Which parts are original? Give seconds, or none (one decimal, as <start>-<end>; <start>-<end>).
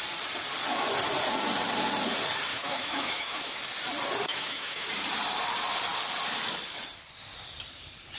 0.0-2.5; 3.6-4.3; 4.9-8.2